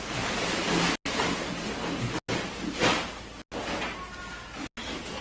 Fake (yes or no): no